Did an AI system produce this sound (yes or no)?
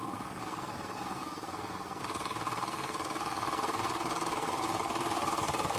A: yes